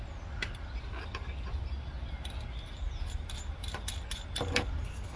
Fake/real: real